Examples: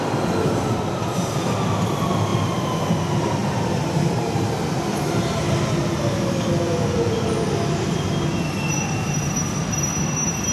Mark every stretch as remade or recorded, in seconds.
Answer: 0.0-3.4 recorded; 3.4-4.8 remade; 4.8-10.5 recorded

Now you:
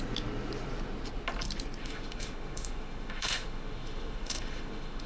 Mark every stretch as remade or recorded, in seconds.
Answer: 0.0-1.8 recorded; 1.8-5.1 remade

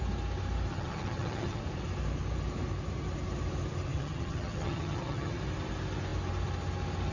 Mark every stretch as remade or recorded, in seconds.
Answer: 0.0-0.7 recorded; 0.7-1.6 remade; 1.6-3.9 recorded; 3.9-5.4 remade; 5.4-7.1 recorded

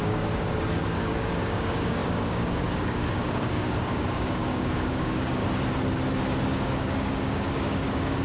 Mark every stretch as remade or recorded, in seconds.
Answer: 0.0-5.4 remade; 5.4-6.4 recorded; 6.4-8.2 remade

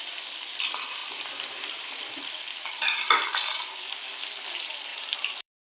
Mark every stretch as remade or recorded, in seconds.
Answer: 0.0-1.0 recorded; 1.0-3.9 remade; 3.9-4.9 recorded; 4.9-5.8 remade